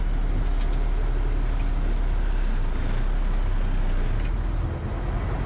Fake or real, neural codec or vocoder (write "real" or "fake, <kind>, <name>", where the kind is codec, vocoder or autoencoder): real